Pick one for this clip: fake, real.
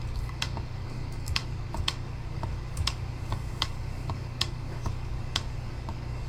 fake